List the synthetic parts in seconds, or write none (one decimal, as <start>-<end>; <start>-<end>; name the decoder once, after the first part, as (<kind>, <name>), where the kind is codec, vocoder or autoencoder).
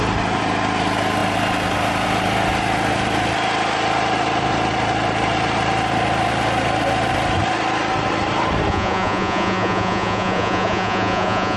8.7-11.6 (vocoder, Vocos)